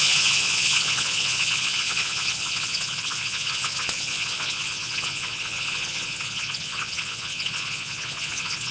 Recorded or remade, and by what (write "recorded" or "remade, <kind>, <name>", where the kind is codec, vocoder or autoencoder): remade, vocoder, Vocos